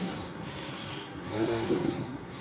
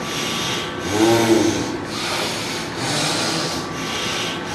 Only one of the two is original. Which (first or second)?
second